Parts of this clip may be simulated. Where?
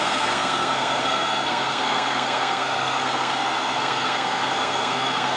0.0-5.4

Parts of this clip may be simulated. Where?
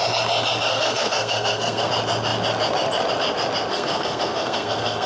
0.7-1.9; 3.7-5.1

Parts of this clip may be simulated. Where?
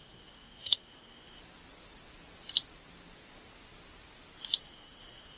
0.0-1.4; 4.6-5.4